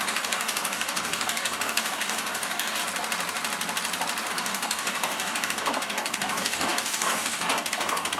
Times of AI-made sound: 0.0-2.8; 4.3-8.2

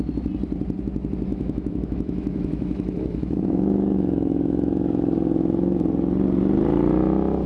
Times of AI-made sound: 1.3-5.8

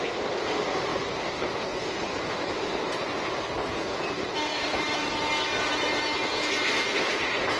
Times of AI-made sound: 4.5-5.1

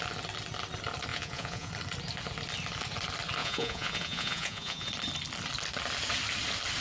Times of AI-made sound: 1.1-1.7; 3.4-4.9

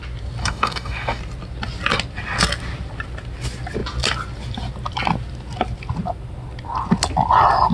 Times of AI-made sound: 0.4-1.2

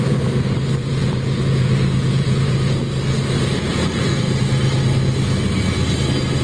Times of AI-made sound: 0.8-2.9; 3.7-4.4